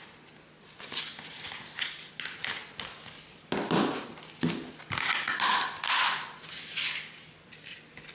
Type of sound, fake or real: real